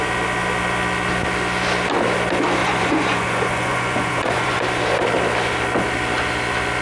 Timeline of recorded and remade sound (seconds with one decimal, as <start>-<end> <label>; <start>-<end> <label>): 0.0-2.6 recorded; 2.6-4.6 remade; 4.6-6.8 recorded